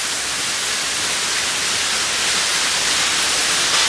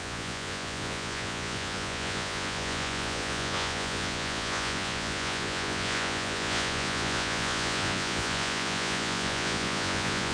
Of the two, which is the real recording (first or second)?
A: first